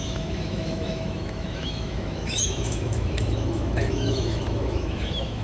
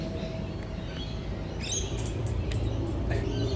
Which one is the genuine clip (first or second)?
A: second